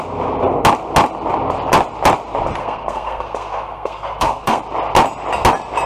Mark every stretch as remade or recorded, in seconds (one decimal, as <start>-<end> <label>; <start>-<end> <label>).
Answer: 0.0-2.6 recorded; 2.6-4.6 remade; 4.6-5.9 recorded